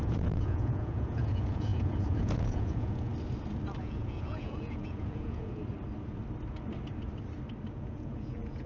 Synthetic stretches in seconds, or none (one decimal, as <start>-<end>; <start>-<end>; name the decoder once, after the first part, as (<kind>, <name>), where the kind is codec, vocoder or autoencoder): 0.0-3.1 (vocoder, Vocos); 3.8-5.6; 7.7-8.7